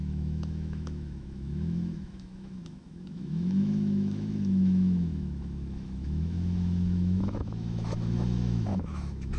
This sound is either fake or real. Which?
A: fake